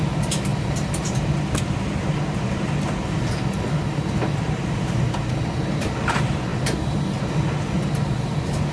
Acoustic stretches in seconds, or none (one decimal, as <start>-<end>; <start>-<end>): 0.0-8.7